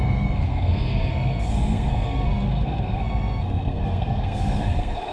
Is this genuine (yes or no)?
no